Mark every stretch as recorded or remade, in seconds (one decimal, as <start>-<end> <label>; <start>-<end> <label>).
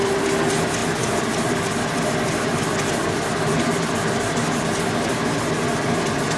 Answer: 0.0-0.8 recorded; 0.8-4.6 remade; 4.6-6.4 recorded